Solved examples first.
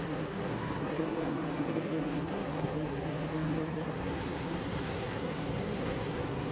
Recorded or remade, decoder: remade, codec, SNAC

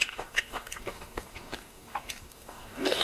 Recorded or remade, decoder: remade, codec, DAC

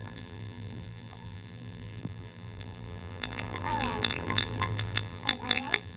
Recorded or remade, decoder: remade, vocoder, BigVGAN v2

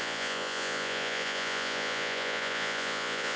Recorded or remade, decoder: remade, vocoder, Vocos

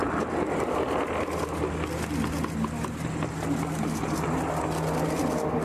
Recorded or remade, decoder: recorded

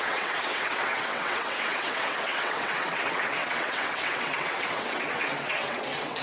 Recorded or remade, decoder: remade, vocoder, WaveNeXt